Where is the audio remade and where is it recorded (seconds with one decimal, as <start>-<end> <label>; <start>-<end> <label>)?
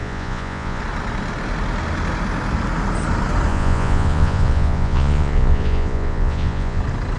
0.0-0.8 remade; 0.8-3.5 recorded; 3.5-6.8 remade; 6.8-7.2 recorded